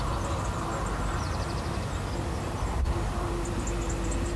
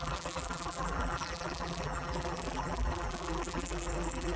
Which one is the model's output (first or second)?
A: second